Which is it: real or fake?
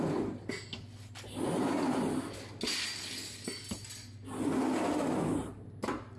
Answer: real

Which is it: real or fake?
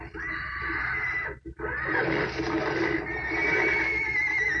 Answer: real